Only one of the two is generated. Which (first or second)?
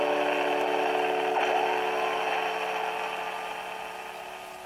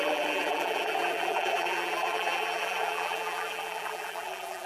second